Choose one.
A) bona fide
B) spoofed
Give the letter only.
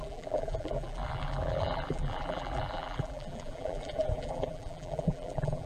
B